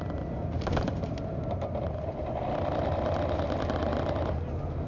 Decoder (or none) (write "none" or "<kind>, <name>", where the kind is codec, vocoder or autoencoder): none